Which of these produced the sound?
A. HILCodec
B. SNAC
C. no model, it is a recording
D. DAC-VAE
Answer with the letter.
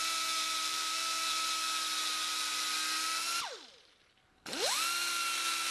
C